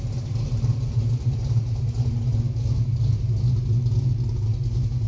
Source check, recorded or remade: recorded